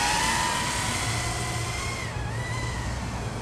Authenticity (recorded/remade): recorded